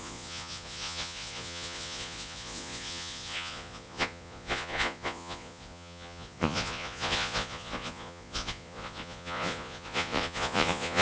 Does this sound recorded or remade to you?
remade